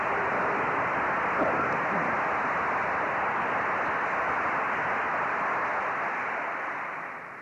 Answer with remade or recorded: remade